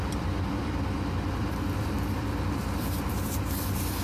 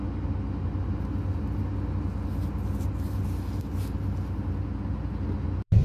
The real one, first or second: second